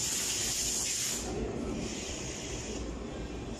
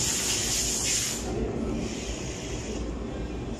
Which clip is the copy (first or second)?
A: first